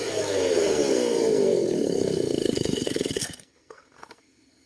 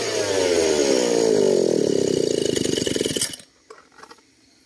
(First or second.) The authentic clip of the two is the second